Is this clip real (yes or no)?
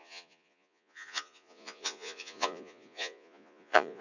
no